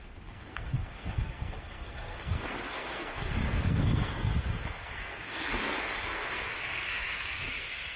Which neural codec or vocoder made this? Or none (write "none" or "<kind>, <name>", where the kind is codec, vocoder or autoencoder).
codec, SNAC